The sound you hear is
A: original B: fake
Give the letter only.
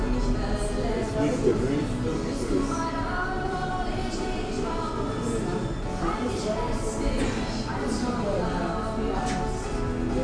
A